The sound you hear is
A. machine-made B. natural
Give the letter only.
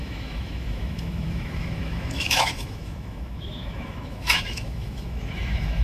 A